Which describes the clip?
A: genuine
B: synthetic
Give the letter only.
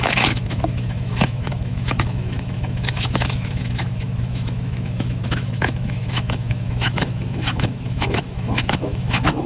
B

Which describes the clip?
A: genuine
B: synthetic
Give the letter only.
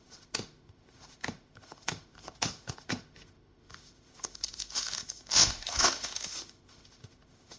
B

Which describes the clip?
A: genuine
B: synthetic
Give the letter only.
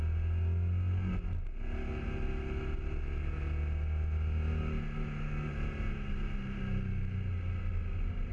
A